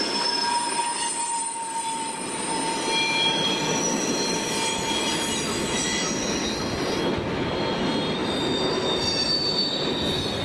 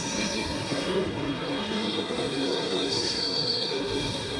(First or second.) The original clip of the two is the first